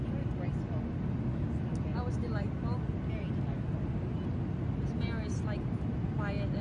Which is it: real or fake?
real